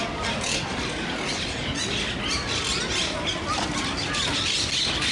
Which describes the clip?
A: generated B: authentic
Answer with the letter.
B